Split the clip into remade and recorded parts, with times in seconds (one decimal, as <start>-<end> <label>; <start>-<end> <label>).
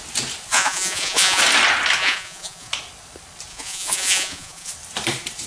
0.0-0.5 recorded; 0.5-1.4 remade; 1.4-2.0 recorded; 2.0-2.7 remade; 2.7-3.5 recorded; 3.5-4.7 remade; 4.7-5.5 recorded